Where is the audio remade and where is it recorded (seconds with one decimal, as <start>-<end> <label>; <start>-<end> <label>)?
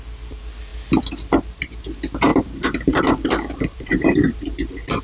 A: 0.0-2.3 recorded; 2.3-5.0 remade